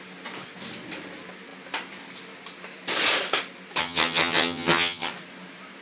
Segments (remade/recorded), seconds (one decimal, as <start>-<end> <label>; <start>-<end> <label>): 0.0-3.8 recorded; 3.8-5.1 remade; 5.1-5.8 recorded